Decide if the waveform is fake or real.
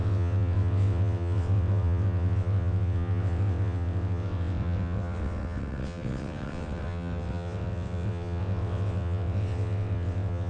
fake